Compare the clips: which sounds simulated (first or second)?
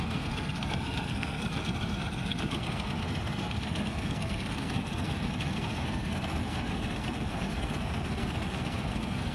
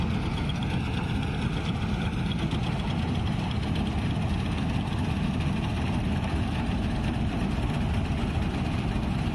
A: first